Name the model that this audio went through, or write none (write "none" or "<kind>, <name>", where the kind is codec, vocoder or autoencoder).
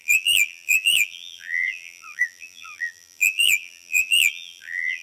vocoder, BigVGAN v2